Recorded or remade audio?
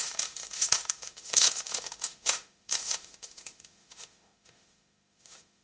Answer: remade